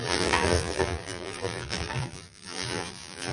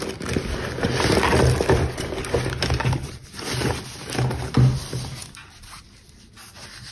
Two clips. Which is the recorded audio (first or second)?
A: second